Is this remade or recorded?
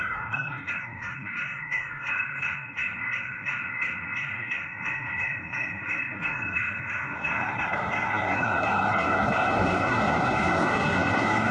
remade